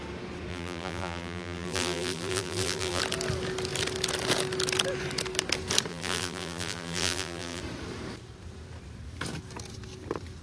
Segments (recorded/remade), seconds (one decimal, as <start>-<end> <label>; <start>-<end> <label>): 0.0-0.5 recorded; 0.5-3.0 remade; 3.0-5.9 recorded; 5.9-7.6 remade; 7.6-10.4 recorded